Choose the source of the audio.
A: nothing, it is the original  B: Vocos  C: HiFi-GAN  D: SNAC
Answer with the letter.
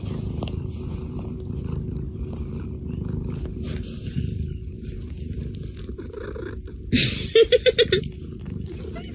A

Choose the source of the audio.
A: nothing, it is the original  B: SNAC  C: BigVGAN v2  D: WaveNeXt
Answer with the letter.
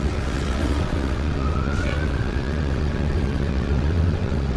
D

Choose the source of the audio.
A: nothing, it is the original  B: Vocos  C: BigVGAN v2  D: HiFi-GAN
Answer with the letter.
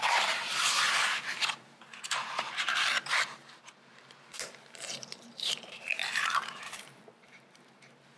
C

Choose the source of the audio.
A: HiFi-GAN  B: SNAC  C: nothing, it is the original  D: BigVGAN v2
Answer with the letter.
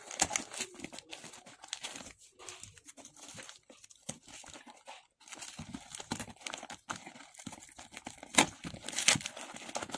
C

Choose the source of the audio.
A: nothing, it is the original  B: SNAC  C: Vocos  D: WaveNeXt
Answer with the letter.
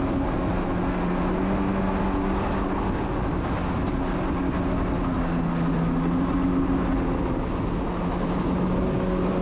A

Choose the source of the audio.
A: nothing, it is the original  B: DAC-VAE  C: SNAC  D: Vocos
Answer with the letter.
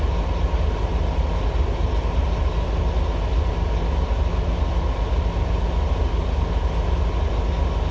A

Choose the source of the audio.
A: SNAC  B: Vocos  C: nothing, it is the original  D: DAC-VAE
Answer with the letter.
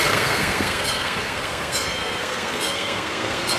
A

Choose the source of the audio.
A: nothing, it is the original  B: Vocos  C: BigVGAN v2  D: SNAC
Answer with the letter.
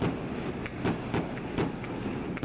A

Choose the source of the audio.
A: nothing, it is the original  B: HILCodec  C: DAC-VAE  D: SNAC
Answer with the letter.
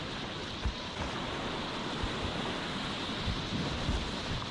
A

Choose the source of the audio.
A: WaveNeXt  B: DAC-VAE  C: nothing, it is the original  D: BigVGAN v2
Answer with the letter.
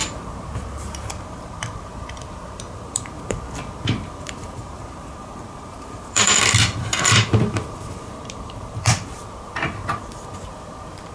D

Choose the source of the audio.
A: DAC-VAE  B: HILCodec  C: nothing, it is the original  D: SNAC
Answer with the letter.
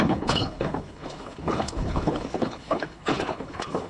B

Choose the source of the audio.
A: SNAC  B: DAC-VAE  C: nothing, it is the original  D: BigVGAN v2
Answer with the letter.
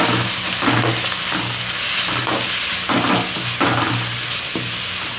C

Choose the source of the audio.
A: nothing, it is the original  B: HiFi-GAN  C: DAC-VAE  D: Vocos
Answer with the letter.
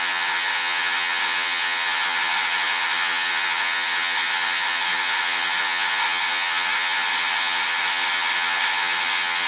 B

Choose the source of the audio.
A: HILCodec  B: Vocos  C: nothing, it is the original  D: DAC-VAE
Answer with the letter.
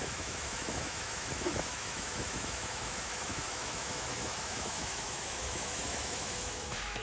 D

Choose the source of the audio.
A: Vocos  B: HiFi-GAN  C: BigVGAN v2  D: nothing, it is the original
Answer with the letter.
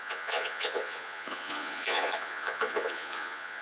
A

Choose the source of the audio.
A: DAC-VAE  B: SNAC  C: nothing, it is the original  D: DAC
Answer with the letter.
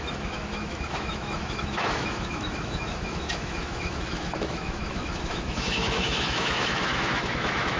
A